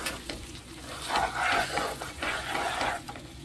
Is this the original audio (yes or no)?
no